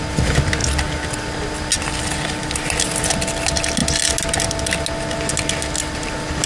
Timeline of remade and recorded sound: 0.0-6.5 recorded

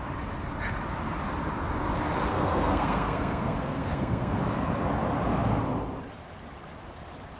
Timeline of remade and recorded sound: 0.0-2.3 recorded; 2.3-4.4 remade; 4.4-7.4 recorded